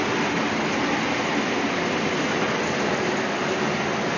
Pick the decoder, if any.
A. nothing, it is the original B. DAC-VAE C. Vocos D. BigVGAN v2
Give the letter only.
A